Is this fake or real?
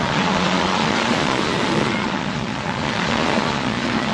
fake